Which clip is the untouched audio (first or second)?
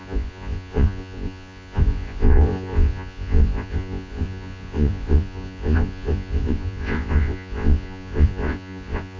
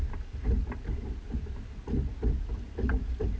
second